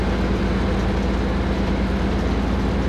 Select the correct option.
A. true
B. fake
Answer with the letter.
A